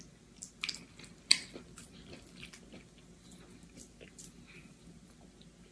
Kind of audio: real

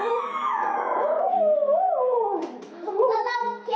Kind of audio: fake